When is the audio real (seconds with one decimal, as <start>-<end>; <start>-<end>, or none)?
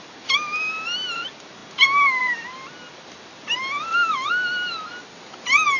0.0-5.8